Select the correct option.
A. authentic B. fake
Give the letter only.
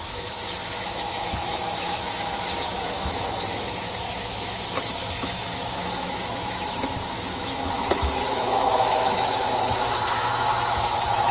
B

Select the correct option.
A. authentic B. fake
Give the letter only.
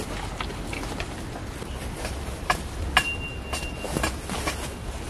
A